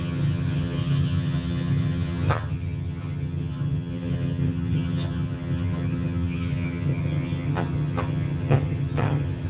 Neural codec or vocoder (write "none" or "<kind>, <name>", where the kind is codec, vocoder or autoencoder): vocoder, HiFi-GAN